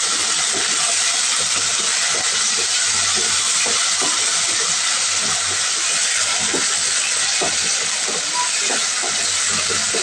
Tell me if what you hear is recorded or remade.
recorded